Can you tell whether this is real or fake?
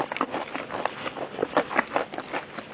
real